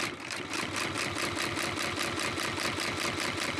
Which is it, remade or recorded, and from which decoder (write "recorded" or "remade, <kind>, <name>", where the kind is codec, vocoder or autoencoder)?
recorded